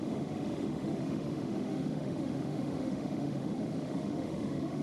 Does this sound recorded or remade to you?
remade